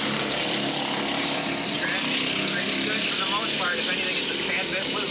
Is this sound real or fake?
real